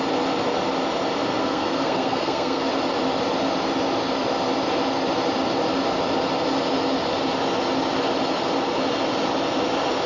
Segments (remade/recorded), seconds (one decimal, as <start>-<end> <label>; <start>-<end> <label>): 0.0-1.4 recorded; 1.4-2.7 remade; 2.7-10.1 recorded